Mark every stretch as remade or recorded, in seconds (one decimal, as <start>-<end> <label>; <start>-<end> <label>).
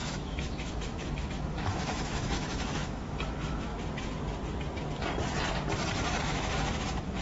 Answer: 0.0-3.7 remade; 3.7-6.2 recorded; 6.2-7.2 remade